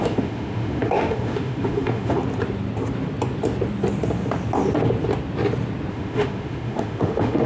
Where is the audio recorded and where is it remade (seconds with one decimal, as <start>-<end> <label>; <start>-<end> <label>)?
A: 0.0-2.2 remade; 2.2-5.9 recorded; 5.9-7.5 remade